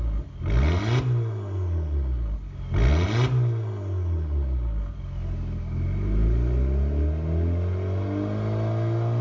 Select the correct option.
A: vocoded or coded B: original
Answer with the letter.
B